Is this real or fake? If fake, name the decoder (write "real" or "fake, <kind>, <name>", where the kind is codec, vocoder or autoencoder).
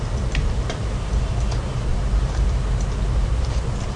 fake, vocoder, BigVGAN v2